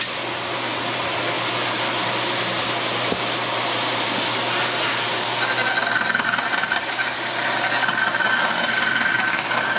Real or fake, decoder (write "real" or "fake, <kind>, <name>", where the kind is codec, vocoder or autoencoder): real